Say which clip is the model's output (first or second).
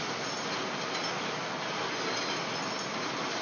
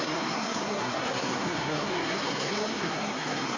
second